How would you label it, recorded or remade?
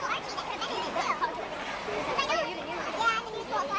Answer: recorded